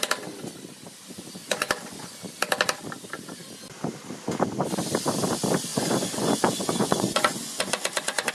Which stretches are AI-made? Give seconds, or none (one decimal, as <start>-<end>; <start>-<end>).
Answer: 1.4-2.2; 5.7-8.3